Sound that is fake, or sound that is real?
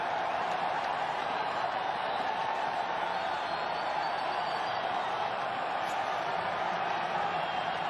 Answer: fake